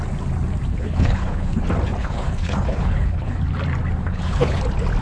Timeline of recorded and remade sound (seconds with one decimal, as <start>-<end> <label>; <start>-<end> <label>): 0.0-0.7 recorded; 0.7-1.6 remade; 1.6-2.0 recorded; 2.0-3.4 remade; 3.4-4.0 recorded; 4.0-4.6 remade; 4.6-5.0 recorded